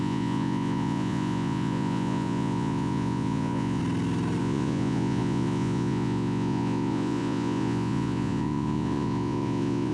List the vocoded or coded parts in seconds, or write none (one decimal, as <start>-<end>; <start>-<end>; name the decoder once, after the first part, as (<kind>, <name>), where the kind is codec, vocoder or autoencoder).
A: 0.0-3.8 (vocoder, Vocos); 4.4-9.9